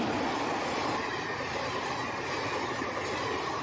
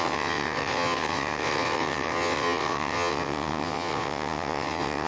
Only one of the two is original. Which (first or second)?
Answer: first